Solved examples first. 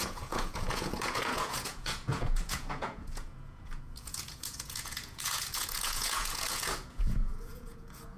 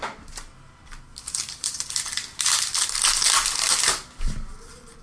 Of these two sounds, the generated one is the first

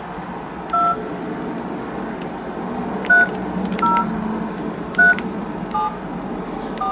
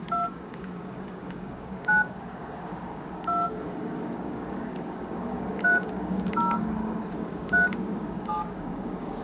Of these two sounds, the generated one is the second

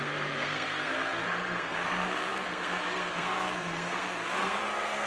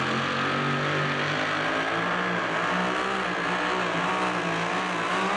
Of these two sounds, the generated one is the first